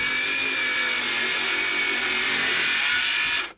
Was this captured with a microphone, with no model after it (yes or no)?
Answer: yes